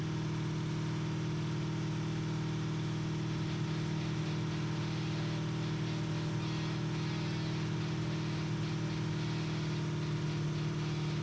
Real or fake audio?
real